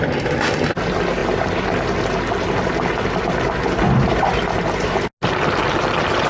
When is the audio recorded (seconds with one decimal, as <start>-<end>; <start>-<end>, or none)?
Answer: 0.0-6.3